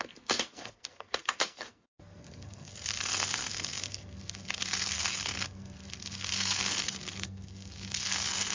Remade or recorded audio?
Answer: remade